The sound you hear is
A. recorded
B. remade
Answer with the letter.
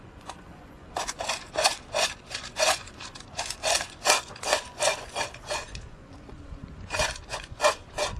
B